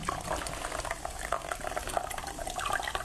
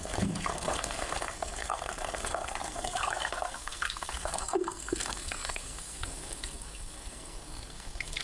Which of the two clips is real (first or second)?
first